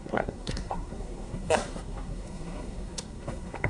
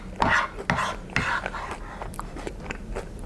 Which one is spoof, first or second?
first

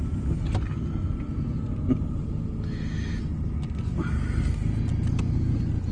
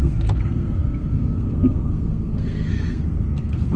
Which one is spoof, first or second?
second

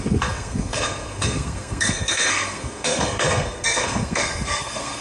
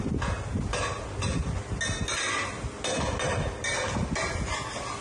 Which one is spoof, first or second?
first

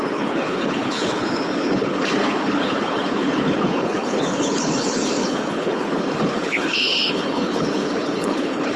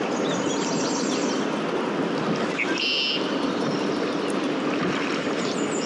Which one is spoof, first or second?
first